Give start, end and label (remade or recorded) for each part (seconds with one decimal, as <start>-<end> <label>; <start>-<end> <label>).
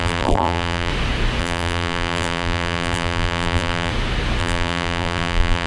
0.0-0.9 remade; 0.9-1.4 recorded; 1.4-3.9 remade; 3.9-4.4 recorded; 4.4-5.7 remade